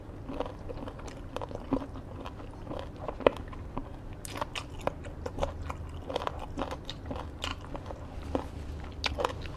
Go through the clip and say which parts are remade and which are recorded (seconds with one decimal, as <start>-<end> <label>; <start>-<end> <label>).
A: 0.0-9.6 recorded